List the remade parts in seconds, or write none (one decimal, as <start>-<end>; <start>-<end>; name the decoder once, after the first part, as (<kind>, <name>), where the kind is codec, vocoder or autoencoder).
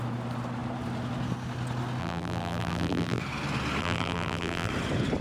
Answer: 2.0-3.2 (vocoder, BigVGAN v2); 3.8-4.7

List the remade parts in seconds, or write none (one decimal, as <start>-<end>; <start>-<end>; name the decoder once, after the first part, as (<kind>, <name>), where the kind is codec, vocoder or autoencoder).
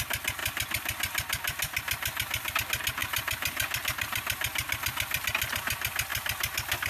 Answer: 0.4-2.5 (vocoder, BigVGAN v2); 3.0-5.2; 6.1-6.9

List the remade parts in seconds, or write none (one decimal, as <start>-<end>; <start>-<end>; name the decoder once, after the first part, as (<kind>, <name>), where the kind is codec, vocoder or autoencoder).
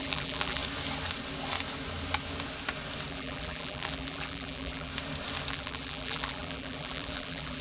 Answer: 0.0-0.6 (vocoder, BigVGAN v2); 3.1-4.9; 5.5-7.6